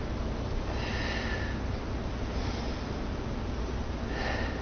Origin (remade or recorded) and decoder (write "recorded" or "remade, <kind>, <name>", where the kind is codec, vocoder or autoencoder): recorded